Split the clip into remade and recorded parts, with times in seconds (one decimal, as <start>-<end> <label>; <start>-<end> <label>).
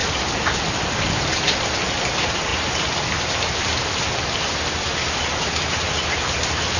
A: 0.0-6.8 recorded